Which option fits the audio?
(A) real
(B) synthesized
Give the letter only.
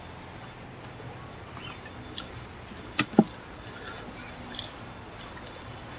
A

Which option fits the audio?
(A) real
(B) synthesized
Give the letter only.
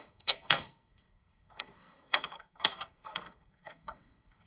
B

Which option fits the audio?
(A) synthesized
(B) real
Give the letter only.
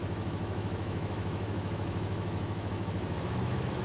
A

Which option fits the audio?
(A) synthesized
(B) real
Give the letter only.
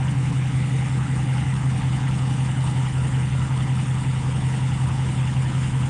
A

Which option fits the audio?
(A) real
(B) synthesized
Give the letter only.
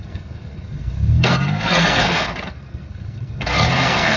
B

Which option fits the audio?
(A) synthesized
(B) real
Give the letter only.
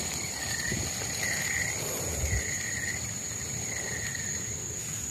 B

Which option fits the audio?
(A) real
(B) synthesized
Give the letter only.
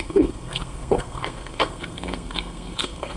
B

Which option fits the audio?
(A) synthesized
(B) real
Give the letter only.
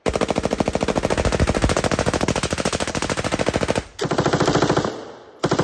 B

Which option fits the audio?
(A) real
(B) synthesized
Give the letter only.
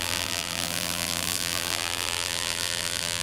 B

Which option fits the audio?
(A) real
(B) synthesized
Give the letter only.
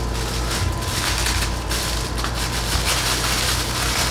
A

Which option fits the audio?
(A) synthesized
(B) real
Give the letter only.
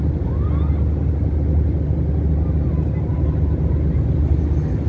B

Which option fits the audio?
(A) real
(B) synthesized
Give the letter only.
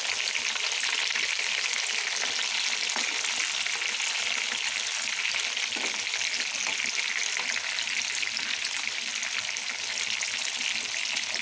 A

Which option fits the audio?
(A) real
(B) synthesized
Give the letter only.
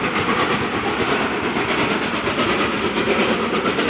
A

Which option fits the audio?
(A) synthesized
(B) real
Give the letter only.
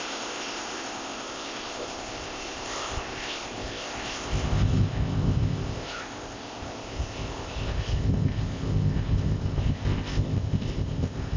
A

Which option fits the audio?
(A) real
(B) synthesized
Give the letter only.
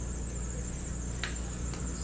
A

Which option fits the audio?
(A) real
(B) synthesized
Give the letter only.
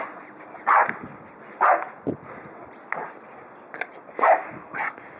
A